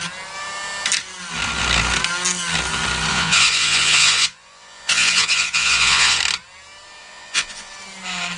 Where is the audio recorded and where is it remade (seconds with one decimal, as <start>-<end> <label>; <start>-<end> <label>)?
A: 0.0-3.1 recorded; 3.1-6.2 remade; 6.2-7.0 recorded; 7.0-7.7 remade; 7.7-8.4 recorded

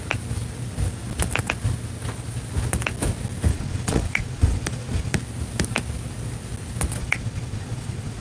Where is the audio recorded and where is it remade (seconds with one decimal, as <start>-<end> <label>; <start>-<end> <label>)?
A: 0.0-3.5 recorded; 3.5-5.2 remade; 5.2-7.0 recorded; 7.0-8.2 remade

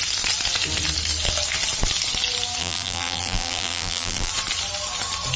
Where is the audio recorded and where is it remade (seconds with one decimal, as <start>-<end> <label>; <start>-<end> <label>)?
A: 0.0-2.6 recorded; 2.6-4.3 remade; 4.3-5.4 recorded

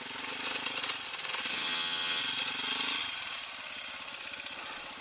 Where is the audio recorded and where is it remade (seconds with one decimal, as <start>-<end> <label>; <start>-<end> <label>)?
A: 0.0-1.5 recorded; 1.5-2.2 remade; 2.2-5.0 recorded

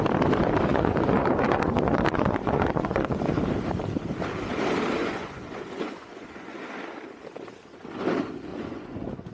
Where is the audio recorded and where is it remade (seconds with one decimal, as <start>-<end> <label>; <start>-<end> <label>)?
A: 0.0-0.7 recorded; 0.7-3.2 remade; 3.2-5.0 recorded; 5.0-6.6 remade; 6.6-8.5 recorded; 8.5-9.3 remade

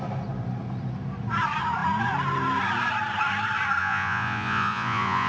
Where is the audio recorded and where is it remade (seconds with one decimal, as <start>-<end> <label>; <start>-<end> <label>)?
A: 0.0-3.8 recorded; 3.8-5.3 remade